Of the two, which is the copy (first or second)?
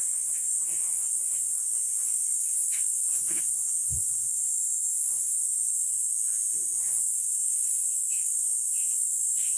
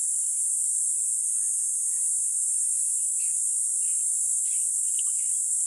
first